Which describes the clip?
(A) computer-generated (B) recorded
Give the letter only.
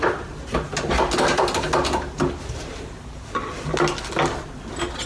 B